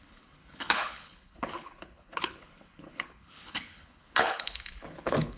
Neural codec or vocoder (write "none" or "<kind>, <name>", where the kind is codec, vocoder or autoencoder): codec, HILCodec